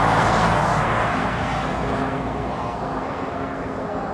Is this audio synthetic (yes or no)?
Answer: yes